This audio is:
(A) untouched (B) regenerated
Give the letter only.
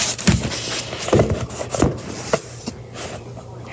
A